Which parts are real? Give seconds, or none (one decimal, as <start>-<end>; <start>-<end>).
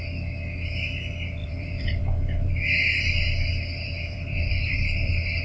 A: 0.0-1.4; 2.5-3.5